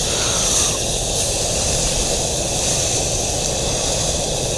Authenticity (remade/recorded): recorded